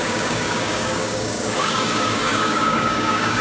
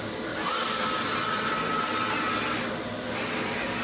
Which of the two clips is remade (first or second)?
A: first